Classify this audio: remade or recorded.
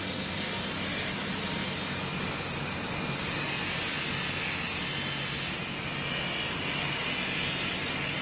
recorded